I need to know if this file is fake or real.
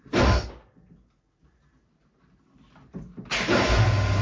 real